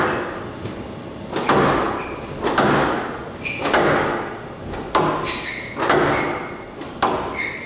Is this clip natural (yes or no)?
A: yes